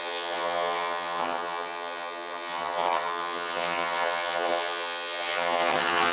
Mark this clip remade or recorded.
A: remade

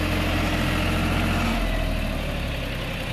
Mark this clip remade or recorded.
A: recorded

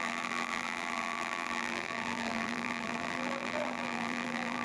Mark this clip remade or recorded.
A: remade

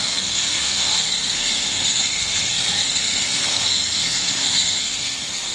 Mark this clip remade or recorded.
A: remade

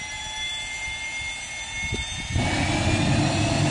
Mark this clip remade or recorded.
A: recorded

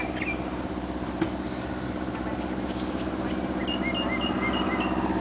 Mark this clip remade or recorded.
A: recorded